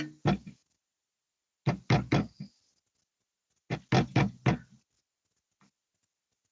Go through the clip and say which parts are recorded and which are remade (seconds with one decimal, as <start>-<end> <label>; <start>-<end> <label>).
0.0-6.5 recorded